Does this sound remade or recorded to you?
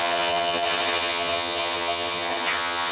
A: remade